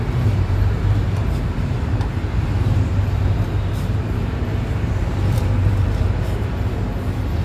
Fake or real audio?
fake